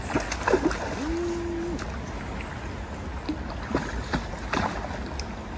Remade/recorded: recorded